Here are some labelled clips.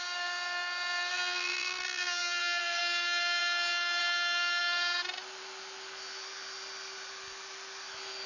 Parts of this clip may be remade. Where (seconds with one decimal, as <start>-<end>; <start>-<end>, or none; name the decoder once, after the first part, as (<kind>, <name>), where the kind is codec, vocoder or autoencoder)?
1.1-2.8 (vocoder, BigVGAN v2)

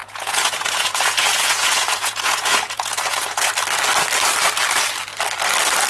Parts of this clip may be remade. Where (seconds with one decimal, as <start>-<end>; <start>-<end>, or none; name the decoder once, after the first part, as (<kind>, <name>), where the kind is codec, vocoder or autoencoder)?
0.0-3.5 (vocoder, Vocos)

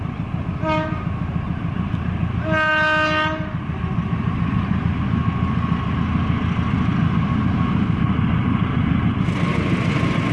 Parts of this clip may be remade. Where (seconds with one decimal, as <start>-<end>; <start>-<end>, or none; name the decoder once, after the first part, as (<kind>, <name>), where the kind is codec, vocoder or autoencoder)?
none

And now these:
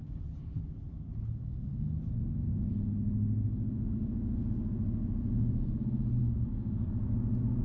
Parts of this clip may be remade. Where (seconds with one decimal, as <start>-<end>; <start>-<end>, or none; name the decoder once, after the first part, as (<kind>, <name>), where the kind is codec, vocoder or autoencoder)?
6.2-6.9 (codec, DAC)

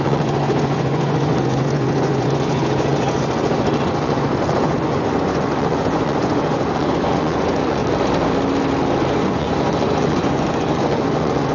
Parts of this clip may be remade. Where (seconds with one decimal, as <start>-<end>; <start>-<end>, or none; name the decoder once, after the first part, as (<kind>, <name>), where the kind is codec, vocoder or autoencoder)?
0.0-7.8 (vocoder, Vocos); 9.1-11.5

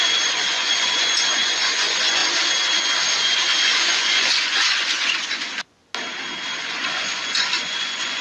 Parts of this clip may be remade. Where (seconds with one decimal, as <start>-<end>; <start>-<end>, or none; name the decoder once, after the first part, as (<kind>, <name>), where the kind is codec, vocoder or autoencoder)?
0.0-2.2 (vocoder, Vocos); 3.1-5.8; 6.6-8.2

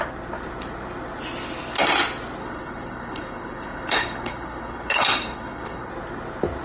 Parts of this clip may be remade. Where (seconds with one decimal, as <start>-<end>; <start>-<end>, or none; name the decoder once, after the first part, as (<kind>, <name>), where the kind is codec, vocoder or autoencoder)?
2.4-5.9 (codec, HILCodec)

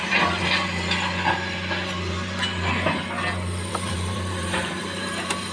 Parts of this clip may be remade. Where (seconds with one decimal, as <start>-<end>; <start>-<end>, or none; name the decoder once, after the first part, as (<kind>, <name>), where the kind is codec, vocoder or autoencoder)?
0.0-0.4 (vocoder, BigVGAN v2); 3.7-5.5